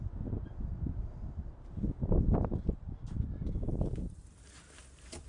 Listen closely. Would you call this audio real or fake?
real